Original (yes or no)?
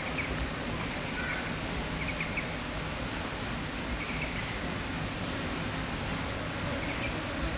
yes